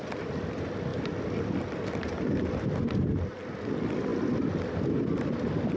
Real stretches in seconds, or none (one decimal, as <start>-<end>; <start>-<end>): 0.0-5.8